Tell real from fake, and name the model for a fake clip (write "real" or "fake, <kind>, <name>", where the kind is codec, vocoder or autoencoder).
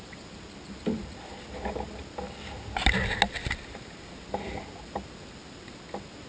real